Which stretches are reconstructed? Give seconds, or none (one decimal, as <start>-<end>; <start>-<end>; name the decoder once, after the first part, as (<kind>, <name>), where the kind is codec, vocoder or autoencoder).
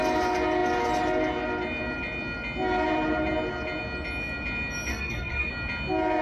4.9-5.5 (codec, SNAC)